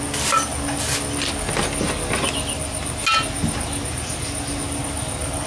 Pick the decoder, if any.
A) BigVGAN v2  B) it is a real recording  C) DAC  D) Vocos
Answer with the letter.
B